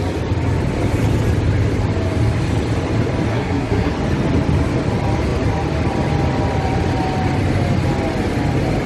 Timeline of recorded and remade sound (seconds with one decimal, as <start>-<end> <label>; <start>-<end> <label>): 0.0-3.3 recorded; 3.3-3.9 remade; 3.9-8.9 recorded